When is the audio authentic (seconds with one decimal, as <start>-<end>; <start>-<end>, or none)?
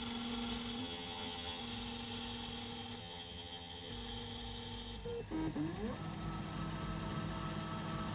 0.0-0.8; 1.6-3.0; 3.9-8.1